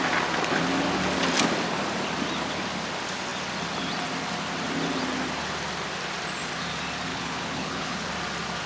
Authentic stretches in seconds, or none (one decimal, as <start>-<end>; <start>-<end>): 0.0-7.1; 8.1-8.7